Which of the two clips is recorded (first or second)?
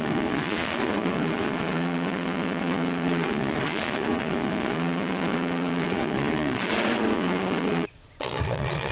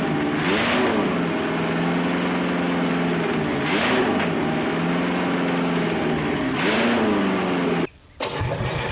second